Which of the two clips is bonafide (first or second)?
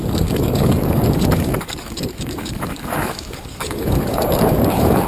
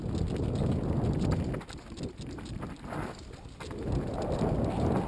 second